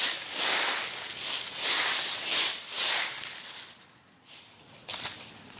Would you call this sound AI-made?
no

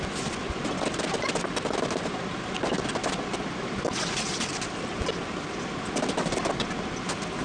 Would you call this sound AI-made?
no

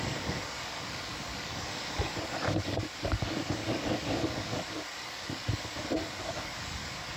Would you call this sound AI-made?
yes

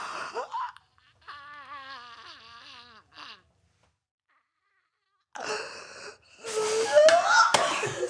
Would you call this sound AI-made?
no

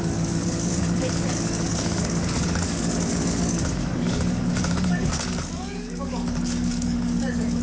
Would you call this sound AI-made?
yes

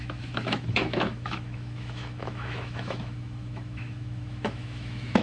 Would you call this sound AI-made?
yes